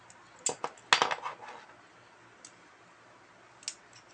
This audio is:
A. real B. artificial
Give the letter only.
A